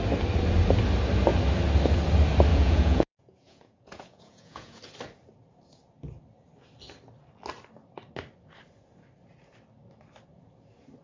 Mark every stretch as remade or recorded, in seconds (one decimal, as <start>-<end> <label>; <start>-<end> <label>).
0.0-2.5 recorded; 2.5-4.8 remade; 4.8-11.0 recorded